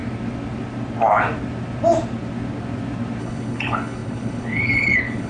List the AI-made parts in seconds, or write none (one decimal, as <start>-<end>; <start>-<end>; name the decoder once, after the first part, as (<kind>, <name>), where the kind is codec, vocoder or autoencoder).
3.2-5.3 (codec, HILCodec)